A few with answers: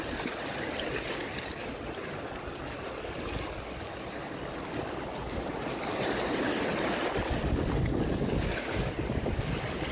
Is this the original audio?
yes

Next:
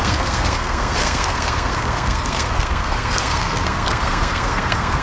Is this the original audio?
no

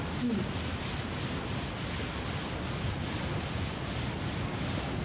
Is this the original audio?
yes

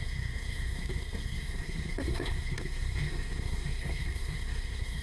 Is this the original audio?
no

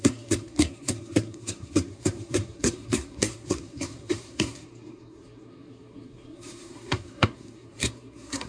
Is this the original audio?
no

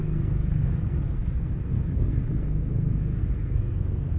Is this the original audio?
no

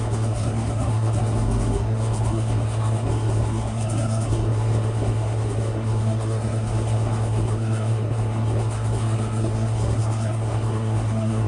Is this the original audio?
no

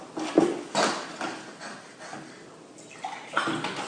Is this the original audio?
yes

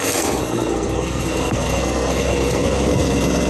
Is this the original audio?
no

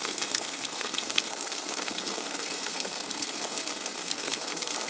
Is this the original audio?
no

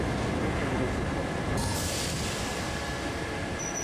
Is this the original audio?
yes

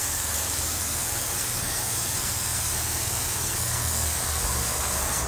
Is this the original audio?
no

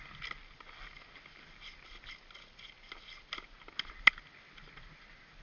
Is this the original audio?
yes